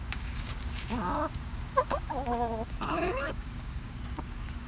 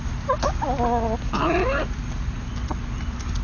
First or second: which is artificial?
first